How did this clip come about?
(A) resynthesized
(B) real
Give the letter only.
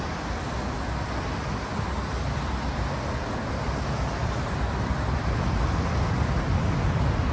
B